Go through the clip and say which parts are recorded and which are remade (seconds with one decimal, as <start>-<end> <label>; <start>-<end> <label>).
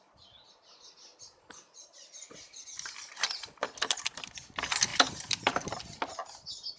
0.0-4.9 recorded; 4.9-5.8 remade; 5.8-6.8 recorded